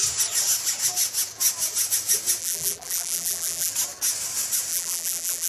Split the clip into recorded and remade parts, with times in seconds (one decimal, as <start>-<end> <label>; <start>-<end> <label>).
0.0-2.4 recorded; 2.4-3.7 remade; 3.7-4.7 recorded; 4.7-5.5 remade